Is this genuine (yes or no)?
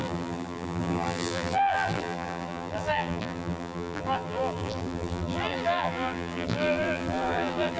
no